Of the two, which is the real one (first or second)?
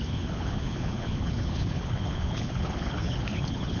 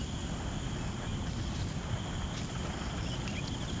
second